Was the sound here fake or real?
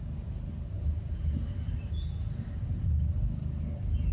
real